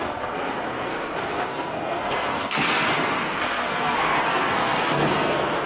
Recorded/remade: remade